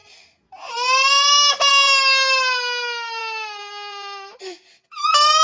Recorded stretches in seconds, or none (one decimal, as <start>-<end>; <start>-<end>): 0.0-5.4